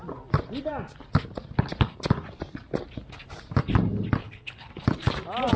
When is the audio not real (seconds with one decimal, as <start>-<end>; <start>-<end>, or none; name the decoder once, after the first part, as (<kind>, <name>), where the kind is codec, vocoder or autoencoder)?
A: 4.2-4.7 (codec, HILCodec)